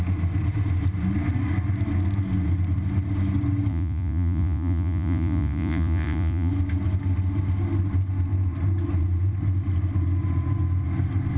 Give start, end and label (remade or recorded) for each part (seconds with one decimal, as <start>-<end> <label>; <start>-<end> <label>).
0.0-3.7 recorded; 3.7-6.5 remade; 6.5-11.4 recorded